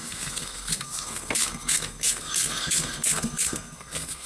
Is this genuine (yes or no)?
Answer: no